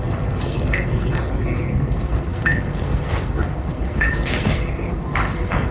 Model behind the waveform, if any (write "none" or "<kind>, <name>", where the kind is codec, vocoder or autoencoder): codec, SNAC